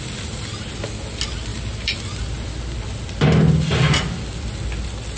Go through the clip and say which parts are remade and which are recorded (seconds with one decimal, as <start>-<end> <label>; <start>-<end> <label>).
0.0-5.2 recorded